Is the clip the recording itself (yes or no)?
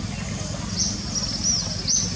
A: yes